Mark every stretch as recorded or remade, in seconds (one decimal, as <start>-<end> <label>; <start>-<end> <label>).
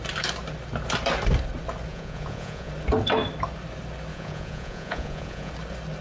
0.0-1.9 recorded; 1.9-2.7 remade; 2.7-4.1 recorded; 4.1-5.5 remade; 5.5-6.0 recorded